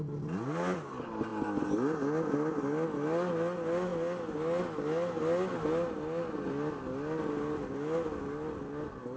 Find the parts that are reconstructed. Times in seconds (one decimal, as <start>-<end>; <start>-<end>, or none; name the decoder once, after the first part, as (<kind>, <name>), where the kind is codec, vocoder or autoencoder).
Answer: none